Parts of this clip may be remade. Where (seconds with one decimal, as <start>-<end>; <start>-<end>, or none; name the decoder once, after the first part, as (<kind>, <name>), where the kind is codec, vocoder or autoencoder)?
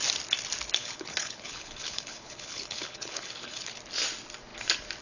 0.8-3.8 (codec, HILCodec)